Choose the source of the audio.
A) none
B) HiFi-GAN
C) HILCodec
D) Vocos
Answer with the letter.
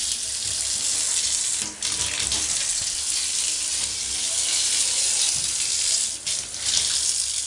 A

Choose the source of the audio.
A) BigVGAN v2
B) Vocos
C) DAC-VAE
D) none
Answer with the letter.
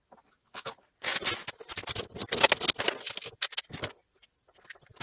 D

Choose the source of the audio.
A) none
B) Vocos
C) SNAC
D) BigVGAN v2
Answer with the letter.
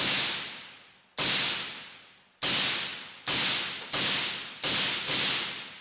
A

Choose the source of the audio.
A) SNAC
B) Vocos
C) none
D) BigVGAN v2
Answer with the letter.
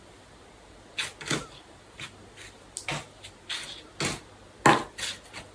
C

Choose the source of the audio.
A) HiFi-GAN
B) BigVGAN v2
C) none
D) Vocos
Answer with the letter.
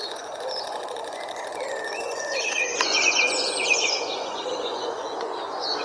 D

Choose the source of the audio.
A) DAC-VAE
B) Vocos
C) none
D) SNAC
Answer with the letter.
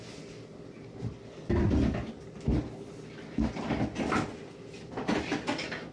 C